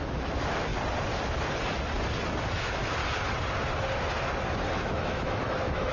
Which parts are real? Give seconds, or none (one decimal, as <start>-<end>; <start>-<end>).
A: 0.7-2.5; 3.0-4.7

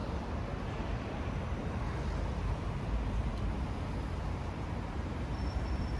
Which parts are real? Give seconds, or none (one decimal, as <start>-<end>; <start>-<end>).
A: 0.0-1.1; 3.3-4.5

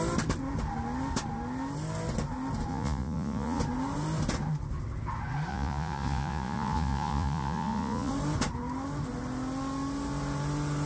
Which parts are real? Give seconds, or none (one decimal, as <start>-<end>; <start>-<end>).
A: 0.0-2.7; 3.6-5.5; 8.1-10.9

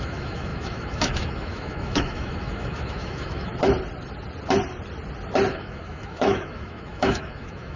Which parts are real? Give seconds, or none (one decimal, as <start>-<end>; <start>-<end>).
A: 3.5-5.5

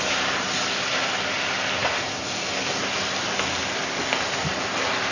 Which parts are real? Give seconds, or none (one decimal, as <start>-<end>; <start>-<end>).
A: 0.0-5.1

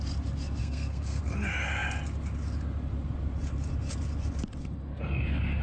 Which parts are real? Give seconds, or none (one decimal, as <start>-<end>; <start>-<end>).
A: 0.0-0.6; 1.2-5.6